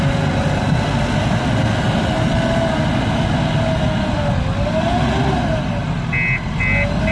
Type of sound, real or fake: real